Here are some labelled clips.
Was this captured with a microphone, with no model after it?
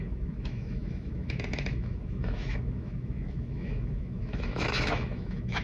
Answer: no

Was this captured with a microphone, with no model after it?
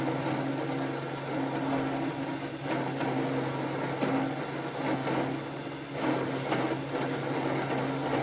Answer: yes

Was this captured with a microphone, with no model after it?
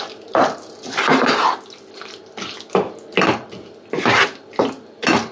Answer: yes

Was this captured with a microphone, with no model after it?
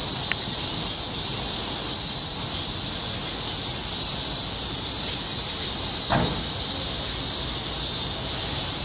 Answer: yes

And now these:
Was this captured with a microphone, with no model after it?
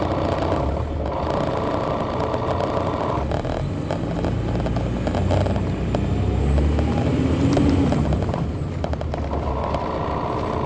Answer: yes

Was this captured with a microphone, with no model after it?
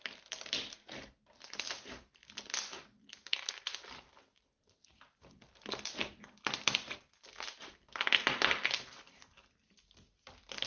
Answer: yes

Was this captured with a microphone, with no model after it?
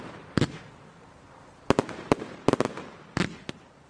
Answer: yes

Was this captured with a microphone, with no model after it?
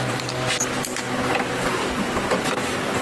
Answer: yes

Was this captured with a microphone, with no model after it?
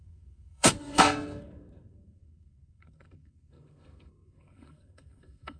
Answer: no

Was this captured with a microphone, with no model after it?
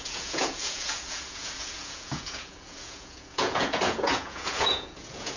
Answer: no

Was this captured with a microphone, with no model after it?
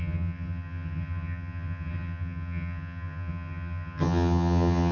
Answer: no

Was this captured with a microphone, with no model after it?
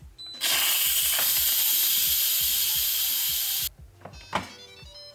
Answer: yes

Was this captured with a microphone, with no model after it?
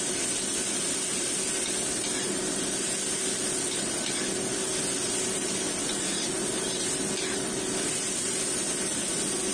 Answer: yes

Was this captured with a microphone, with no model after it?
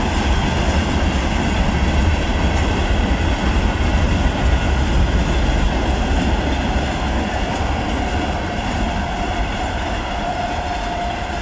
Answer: yes